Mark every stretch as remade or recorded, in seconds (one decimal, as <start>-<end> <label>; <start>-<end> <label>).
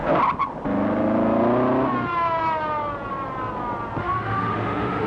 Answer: 0.0-4.0 recorded; 4.0-5.1 remade